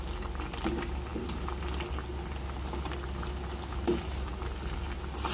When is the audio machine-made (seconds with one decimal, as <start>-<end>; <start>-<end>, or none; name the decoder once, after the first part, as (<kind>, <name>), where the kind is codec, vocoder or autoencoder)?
none